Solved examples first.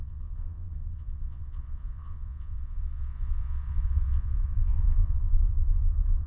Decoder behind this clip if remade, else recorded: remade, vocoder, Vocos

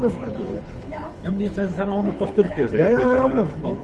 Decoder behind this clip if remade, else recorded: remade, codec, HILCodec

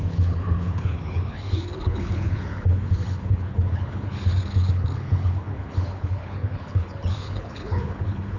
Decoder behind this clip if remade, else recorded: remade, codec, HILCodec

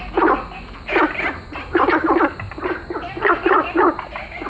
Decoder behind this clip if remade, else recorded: recorded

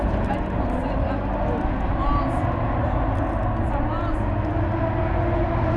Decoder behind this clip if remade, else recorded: recorded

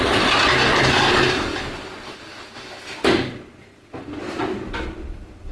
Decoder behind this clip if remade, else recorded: recorded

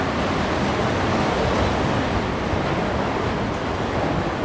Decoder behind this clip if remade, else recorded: recorded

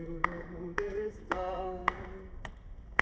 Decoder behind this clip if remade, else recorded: remade, codec, SNAC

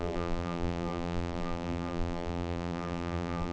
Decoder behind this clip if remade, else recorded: remade, vocoder, BigVGAN v2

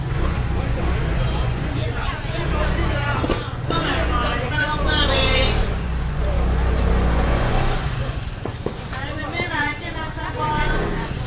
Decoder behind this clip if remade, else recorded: remade, vocoder, Vocos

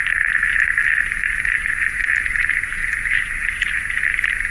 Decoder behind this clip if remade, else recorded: recorded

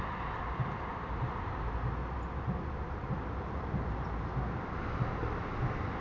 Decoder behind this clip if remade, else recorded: recorded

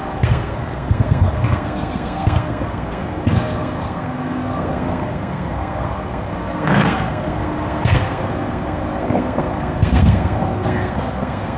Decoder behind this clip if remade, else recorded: remade, codec, SNAC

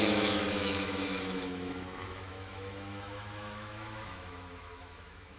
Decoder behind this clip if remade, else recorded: remade, autoencoder, DAC-VAE